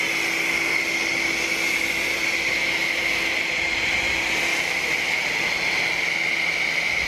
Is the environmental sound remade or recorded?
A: recorded